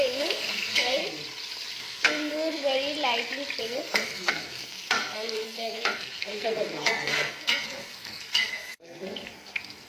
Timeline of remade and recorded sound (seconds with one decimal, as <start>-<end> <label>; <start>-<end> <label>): 0.0-1.0 remade; 1.0-1.8 recorded; 1.8-2.7 remade; 2.7-3.6 recorded; 3.6-9.9 remade